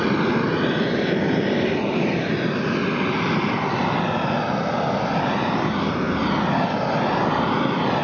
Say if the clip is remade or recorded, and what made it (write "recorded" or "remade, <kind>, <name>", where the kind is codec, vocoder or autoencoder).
recorded